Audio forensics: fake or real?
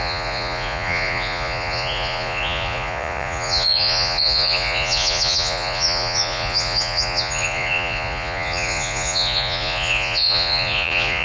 fake